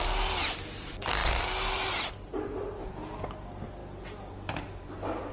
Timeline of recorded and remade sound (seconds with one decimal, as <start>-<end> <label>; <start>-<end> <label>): 0.0-5.3 recorded